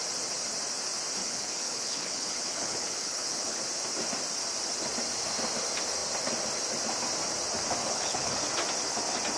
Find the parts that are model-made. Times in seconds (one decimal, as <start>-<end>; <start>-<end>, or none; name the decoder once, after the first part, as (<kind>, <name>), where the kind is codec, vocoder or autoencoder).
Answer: 1.2-3.6 (codec, HILCodec); 7.8-8.4